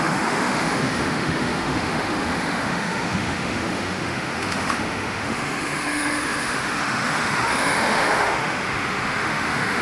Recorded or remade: remade